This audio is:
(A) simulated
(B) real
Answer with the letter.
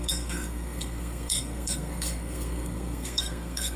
A